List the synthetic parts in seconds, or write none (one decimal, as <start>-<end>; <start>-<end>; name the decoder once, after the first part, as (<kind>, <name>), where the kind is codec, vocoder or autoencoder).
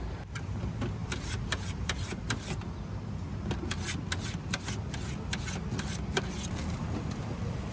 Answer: 1.0-2.2 (vocoder, BigVGAN v2)